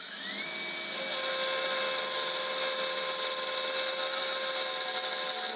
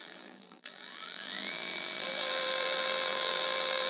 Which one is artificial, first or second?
second